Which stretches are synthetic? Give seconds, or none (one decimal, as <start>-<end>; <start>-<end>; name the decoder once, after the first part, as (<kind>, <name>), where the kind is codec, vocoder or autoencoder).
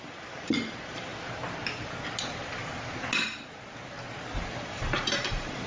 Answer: 0.0-1.1 (vocoder, BigVGAN v2); 4.5-5.7